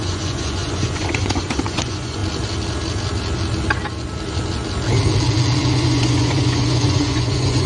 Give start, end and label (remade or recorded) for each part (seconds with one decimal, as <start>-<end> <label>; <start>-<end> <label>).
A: 0.0-2.2 remade; 2.2-5.7 recorded; 5.7-7.7 remade